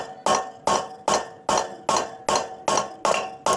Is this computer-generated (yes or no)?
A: no